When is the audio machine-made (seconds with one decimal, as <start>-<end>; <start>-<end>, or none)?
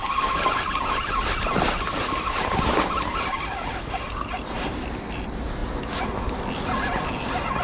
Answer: none